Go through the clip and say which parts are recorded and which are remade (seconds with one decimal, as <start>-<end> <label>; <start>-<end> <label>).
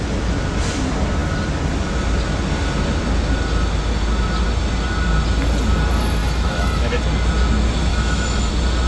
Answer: 0.0-6.2 recorded; 6.2-7.0 remade; 7.0-7.9 recorded; 7.9-8.5 remade; 8.5-8.9 recorded